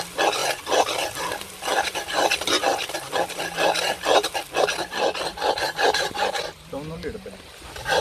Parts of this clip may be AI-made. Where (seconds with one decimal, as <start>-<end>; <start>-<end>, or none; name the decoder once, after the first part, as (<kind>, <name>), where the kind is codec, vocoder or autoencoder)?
none